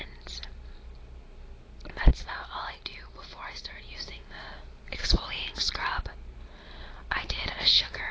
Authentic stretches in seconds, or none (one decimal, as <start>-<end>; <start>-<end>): 0.0-8.1